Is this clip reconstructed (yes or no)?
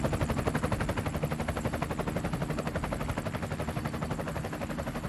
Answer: no